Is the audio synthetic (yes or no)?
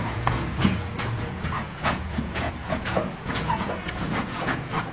yes